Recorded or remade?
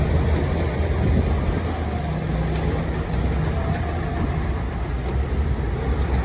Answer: recorded